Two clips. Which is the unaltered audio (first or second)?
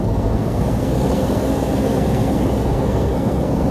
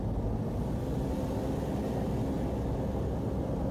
second